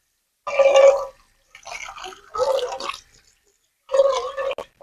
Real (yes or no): yes